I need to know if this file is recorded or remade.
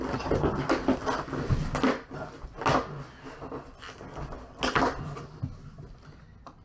recorded